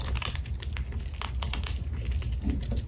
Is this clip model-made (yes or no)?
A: no